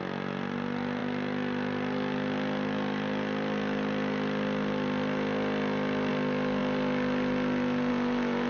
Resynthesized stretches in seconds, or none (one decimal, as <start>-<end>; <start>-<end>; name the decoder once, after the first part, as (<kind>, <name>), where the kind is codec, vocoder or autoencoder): none